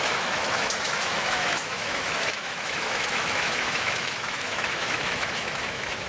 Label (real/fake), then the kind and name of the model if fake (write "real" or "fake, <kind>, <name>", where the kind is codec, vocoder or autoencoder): fake, autoencoder, DAC-VAE